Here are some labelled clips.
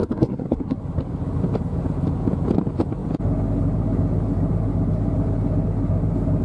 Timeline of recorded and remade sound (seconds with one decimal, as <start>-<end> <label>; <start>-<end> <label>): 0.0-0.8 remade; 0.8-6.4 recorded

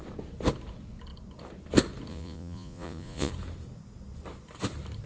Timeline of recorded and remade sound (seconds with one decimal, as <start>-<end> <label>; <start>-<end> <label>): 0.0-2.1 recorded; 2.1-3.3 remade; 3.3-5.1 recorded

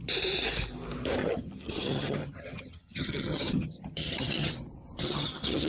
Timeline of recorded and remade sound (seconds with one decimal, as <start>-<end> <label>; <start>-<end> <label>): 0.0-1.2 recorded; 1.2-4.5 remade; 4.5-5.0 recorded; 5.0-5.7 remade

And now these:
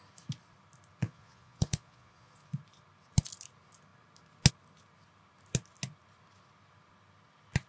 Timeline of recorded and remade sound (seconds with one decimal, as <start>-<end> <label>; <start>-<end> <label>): 0.0-1.0 recorded; 1.0-2.6 remade; 2.6-7.7 recorded

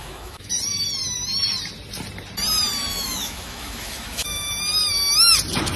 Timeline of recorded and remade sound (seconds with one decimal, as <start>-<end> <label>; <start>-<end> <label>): 0.0-0.5 remade; 0.5-2.9 recorded; 2.9-4.5 remade; 4.5-5.8 recorded

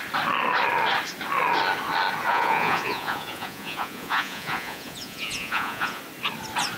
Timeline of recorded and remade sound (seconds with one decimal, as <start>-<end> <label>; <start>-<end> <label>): 0.0-2.3 recorded; 2.3-6.0 remade; 6.0-6.8 recorded